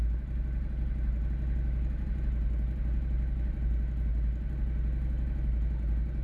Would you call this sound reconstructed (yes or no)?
no